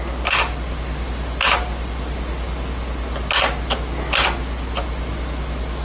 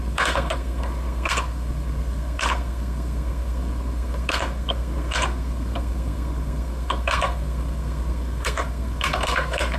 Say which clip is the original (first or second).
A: first